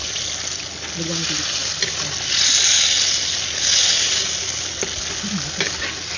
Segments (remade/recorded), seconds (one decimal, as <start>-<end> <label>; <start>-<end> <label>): 0.0-6.2 recorded